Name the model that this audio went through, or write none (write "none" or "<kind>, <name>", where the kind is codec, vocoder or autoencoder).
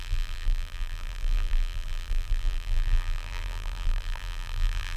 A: vocoder, BigVGAN v2